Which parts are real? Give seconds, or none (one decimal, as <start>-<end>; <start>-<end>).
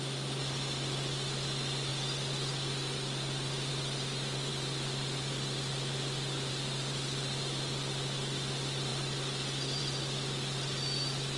0.0-11.4